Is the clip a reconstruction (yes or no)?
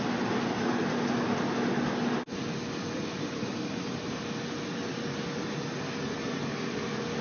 no